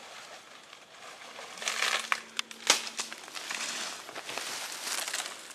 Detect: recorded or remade recorded